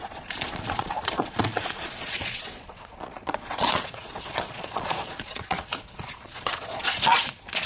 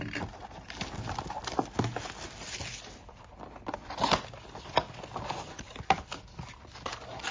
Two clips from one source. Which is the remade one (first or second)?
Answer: first